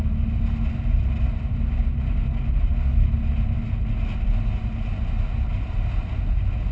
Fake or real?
real